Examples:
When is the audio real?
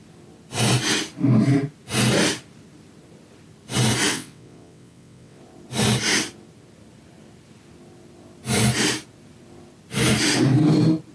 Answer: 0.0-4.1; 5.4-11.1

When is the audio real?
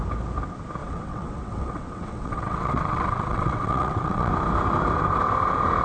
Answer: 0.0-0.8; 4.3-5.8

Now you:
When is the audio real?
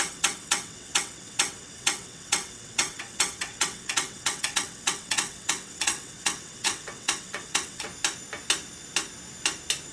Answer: 7.9-9.9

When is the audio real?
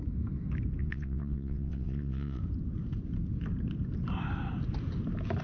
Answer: 0.0-0.8; 2.4-5.4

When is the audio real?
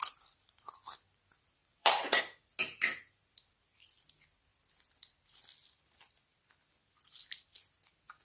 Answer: 0.0-1.6; 2.2-8.2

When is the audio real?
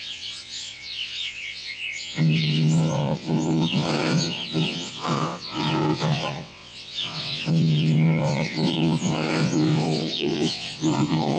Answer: none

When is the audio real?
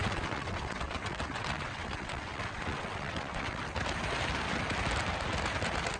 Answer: 3.6-6.0